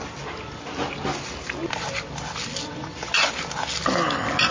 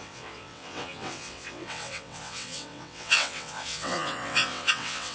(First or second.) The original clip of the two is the first